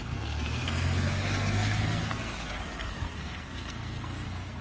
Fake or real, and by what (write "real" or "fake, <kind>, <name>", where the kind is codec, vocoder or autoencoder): fake, codec, SNAC